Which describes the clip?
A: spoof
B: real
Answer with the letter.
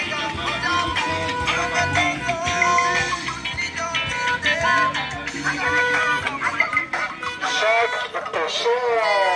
B